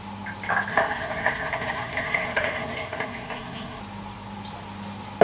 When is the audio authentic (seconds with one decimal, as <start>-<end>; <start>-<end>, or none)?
0.0-0.7; 3.8-5.2